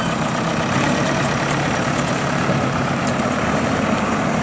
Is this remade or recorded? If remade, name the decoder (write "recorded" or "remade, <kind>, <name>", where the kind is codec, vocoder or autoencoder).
remade, vocoder, BigVGAN v2